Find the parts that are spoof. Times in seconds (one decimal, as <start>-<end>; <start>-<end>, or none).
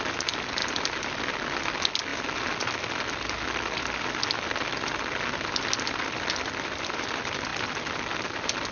0.6-1.2